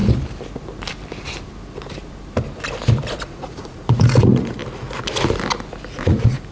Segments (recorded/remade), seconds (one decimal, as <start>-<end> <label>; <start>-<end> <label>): 0.0-3.1 recorded; 3.1-4.6 remade; 4.6-5.9 recorded; 5.9-6.5 remade